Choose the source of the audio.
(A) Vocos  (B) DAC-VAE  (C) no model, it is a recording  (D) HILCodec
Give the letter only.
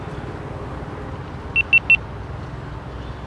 C